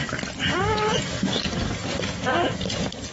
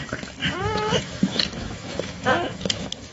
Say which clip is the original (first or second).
first